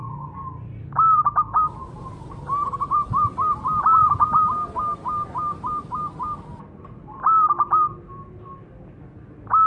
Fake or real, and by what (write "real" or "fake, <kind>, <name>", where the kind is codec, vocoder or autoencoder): real